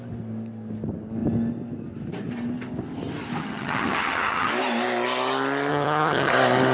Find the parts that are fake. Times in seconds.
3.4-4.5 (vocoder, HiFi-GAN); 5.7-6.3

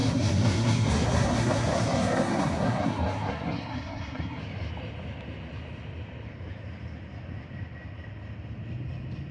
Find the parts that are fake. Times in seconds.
0.0-4.4 (codec, SNAC)

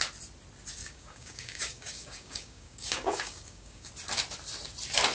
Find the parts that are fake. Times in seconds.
0.8-3.9 (codec, DAC)

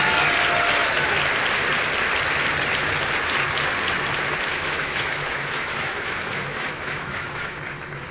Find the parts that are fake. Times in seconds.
4.5-7.6 (autoencoder, DAC-VAE)

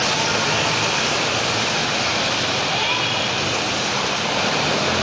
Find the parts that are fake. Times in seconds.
1.8-2.3 (vocoder, BigVGAN v2)

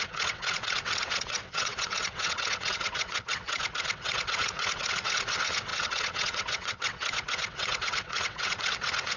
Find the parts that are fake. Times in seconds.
0.0-9.2 (vocoder, WaveNeXt)

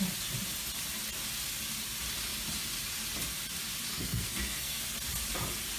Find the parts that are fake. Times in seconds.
3.9-4.8 (codec, SNAC)